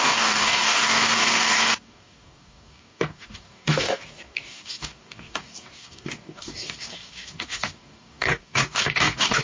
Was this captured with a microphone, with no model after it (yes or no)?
no